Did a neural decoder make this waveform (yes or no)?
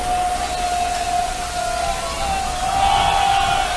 no